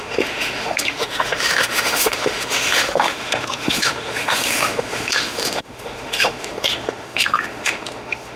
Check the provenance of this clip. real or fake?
fake